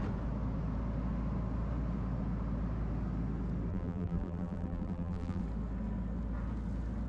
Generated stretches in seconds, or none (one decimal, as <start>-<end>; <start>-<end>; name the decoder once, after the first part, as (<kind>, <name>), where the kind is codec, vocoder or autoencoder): 3.7-5.4 (vocoder, BigVGAN v2)